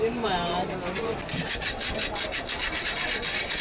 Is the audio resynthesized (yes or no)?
no